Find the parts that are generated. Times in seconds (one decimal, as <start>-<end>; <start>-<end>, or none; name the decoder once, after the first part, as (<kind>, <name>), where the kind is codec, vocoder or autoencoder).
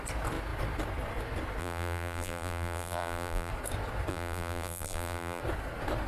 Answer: 1.6-3.5 (vocoder, BigVGAN v2); 4.1-5.4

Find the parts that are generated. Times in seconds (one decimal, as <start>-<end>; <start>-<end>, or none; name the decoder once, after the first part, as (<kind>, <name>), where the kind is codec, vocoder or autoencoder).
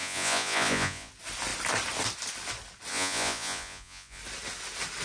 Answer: 0.0-1.1 (vocoder, Vocos); 2.9-4.2